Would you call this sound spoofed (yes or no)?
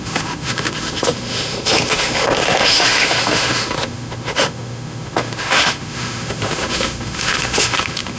yes